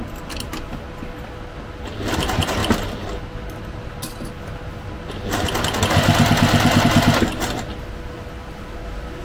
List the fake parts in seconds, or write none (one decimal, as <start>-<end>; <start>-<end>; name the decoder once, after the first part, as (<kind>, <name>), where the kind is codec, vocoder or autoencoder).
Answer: none